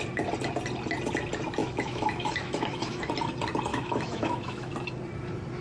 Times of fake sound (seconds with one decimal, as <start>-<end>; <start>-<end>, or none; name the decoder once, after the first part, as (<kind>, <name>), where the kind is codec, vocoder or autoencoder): 1.6-3.1 (autoencoder, DAC-VAE); 3.7-4.7